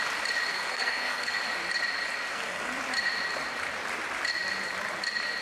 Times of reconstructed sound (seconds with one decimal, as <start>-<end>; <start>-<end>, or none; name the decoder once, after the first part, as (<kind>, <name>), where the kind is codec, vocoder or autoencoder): 0.5-1.4 (codec, SNAC); 2.3-2.8